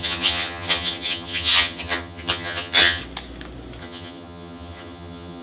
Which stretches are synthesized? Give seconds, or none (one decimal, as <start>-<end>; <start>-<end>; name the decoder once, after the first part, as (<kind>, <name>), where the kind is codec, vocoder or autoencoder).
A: 0.0-3.0 (vocoder, HiFi-GAN); 3.8-5.4